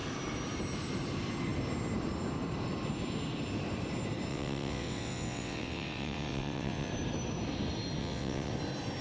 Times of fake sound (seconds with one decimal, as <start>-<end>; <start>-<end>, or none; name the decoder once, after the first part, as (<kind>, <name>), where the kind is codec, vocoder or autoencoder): 4.3-6.9 (vocoder, WaveNeXt); 8.0-8.5